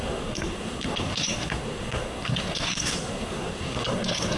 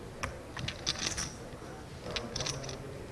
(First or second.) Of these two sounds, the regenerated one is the first